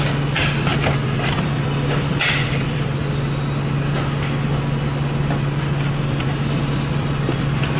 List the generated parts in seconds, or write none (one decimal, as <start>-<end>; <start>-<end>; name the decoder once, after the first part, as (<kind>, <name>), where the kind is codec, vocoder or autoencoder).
0.0-3.0 (vocoder, BigVGAN v2); 6.2-7.8